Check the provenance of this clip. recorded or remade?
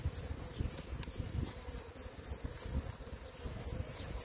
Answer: recorded